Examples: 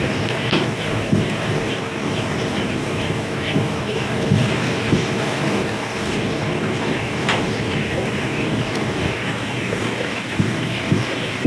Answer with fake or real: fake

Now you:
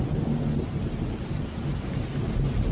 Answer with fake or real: real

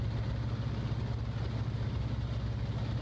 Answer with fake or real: real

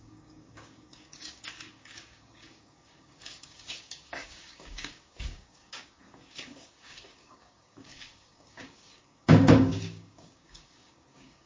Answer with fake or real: fake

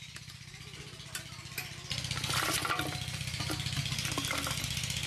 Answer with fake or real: real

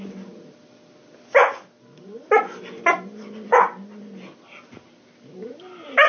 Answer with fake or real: real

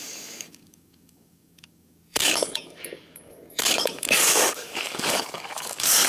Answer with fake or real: fake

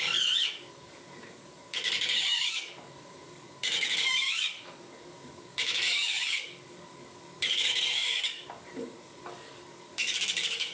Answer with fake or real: fake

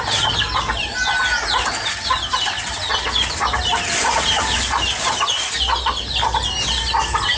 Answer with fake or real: real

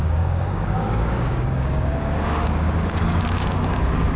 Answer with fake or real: fake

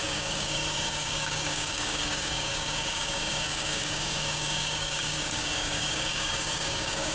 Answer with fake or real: fake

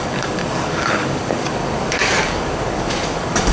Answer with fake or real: fake